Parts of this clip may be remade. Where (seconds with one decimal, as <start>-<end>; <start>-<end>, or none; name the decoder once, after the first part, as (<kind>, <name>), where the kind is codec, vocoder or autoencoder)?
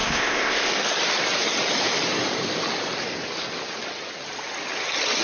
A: 0.0-0.7 (codec, ZipCodec)